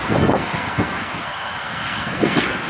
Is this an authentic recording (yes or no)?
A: no